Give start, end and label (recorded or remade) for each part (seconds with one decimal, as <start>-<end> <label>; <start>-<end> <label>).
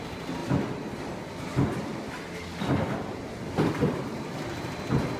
0.0-5.2 recorded